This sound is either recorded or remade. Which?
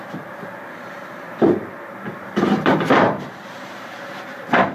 remade